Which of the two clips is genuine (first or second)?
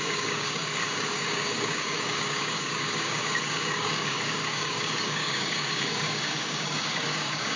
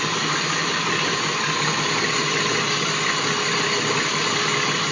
second